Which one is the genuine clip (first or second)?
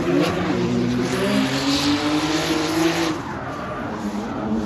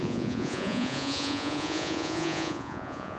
first